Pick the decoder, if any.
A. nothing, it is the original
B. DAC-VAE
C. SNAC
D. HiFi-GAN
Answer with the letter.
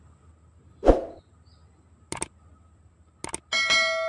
A